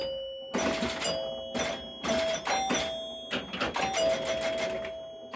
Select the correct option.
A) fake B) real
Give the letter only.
B